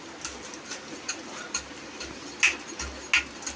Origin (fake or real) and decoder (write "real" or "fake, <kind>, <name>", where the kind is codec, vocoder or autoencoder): real